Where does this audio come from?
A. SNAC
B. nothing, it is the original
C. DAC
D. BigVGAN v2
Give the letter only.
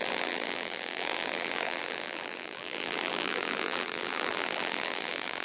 D